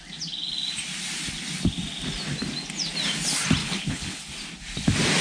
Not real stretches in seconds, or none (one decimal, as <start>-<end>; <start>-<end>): 3.6-4.2